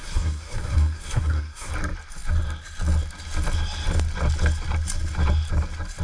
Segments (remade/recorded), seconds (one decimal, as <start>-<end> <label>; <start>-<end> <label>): 0.0-1.7 remade; 1.7-6.0 recorded